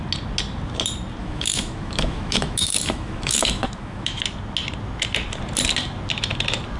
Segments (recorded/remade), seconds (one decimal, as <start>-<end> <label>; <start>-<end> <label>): 0.0-1.2 recorded; 1.2-4.2 remade; 4.2-6.8 recorded